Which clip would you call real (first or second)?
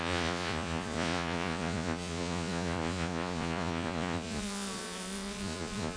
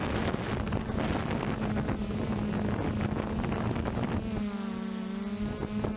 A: second